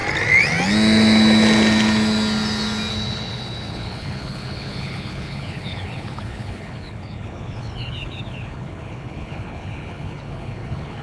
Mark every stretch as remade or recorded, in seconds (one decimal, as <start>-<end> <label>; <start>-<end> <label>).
0.0-2.9 recorded; 2.9-11.0 remade